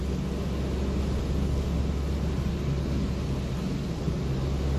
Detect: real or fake real